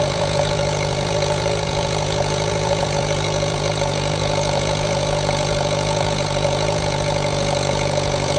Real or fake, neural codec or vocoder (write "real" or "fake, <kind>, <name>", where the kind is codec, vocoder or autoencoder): fake, vocoder, Vocos